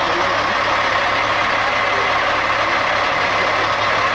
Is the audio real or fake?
real